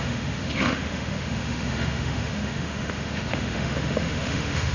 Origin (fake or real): fake